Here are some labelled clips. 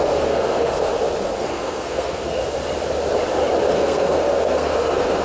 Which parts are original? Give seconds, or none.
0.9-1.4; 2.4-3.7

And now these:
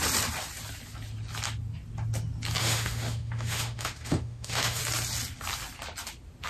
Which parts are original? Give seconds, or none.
0.0-2.6; 4.8-6.5

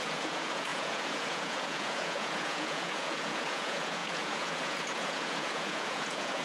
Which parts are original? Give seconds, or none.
none